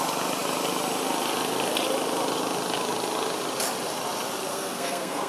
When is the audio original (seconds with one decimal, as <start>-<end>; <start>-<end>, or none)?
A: 0.0-4.5